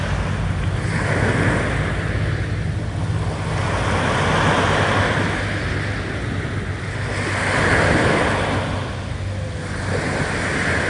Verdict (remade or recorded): recorded